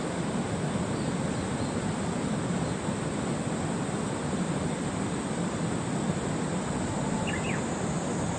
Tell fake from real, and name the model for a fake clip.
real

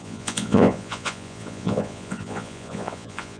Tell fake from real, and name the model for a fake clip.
fake, vocoder, Vocos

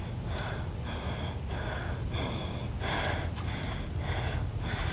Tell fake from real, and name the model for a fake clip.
real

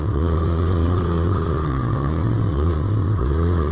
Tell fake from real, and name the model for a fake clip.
fake, vocoder, Vocos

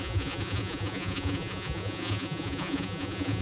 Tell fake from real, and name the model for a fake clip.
fake, vocoder, Vocos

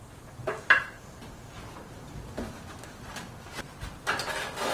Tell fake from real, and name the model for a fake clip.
real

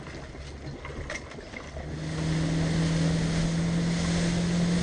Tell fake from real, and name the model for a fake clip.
real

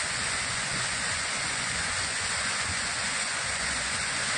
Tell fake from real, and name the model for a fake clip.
fake, vocoder, Vocos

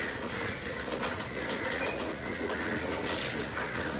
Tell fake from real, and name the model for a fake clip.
fake, vocoder, Vocos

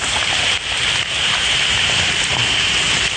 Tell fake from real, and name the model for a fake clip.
real